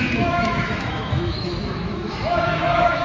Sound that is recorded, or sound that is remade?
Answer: remade